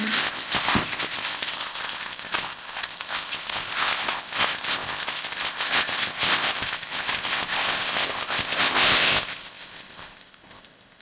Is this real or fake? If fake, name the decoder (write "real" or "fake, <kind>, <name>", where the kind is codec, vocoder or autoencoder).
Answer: fake, codec, ZipCodec